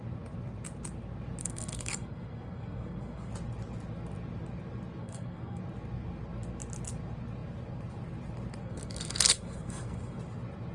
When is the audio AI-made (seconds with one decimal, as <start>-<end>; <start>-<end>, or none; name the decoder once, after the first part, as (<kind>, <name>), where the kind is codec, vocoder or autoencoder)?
1.4-3.3 (codec, SNAC); 5.0-5.6; 8.6-10.2